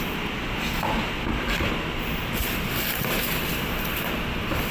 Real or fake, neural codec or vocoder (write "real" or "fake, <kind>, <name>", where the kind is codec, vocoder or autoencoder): real